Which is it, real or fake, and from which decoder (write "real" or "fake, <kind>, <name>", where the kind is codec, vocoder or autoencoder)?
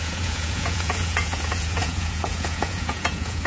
fake, vocoder, Vocos